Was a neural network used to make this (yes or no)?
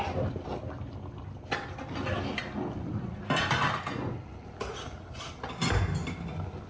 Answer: no